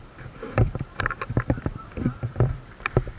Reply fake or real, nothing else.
fake